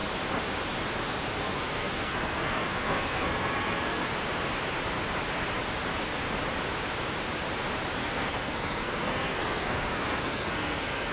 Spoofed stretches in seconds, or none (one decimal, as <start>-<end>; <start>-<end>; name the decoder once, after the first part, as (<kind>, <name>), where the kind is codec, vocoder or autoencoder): 1.4-4.1 (codec, SNAC); 8.0-11.1